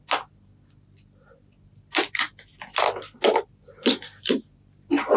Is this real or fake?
real